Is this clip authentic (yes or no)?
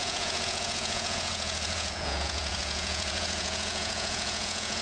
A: no